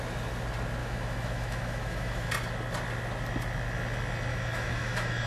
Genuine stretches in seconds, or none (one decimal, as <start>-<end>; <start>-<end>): 0.0-0.8; 2.3-4.3